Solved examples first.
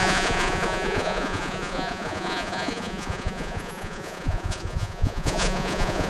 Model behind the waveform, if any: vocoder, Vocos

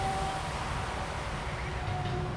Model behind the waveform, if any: none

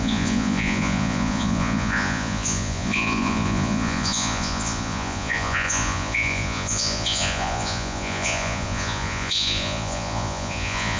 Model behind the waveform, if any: vocoder, Vocos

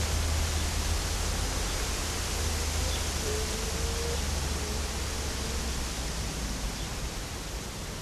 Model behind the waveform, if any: none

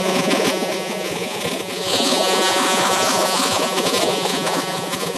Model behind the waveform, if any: vocoder, Vocos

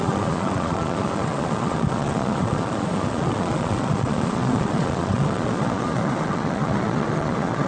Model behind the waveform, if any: vocoder, Vocos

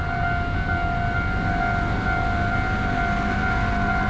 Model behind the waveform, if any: none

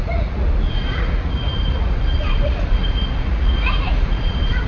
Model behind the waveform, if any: vocoder, Vocos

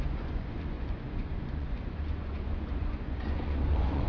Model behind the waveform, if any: vocoder, Vocos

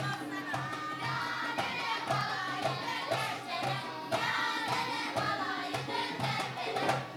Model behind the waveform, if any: none